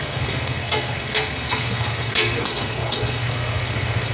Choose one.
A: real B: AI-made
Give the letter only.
B